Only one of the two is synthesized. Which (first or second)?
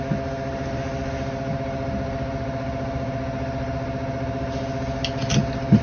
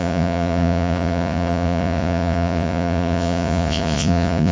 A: second